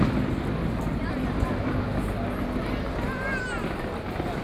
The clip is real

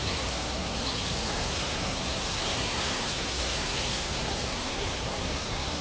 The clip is fake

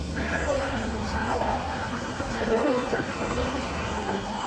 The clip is fake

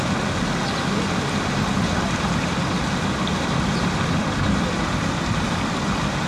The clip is real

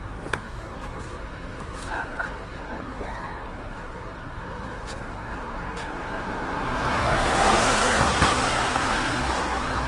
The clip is fake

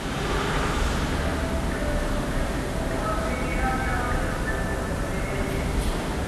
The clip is real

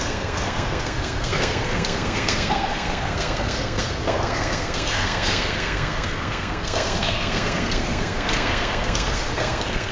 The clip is fake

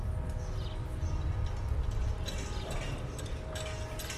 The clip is real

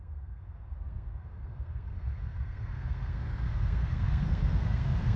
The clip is fake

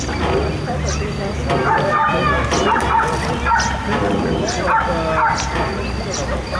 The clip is real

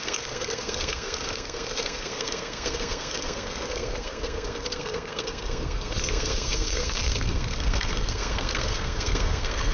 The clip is fake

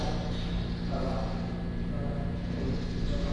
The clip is real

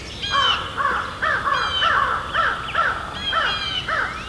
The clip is real